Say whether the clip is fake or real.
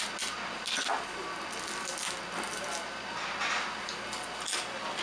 real